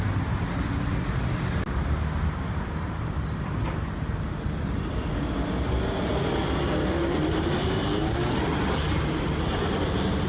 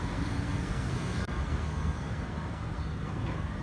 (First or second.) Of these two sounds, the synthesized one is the second